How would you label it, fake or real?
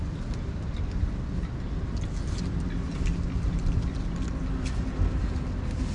real